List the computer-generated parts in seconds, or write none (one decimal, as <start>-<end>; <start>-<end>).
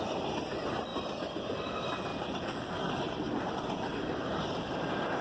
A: 2.1-3.5